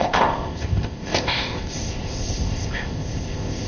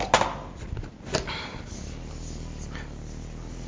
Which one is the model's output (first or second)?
first